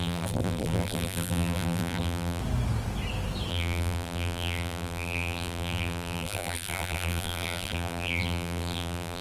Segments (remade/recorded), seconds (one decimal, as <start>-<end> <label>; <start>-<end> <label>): 0.0-2.4 remade; 2.4-3.5 recorded; 3.5-9.2 remade